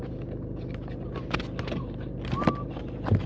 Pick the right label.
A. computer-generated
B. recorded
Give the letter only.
B